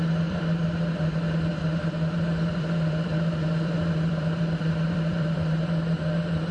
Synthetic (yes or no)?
yes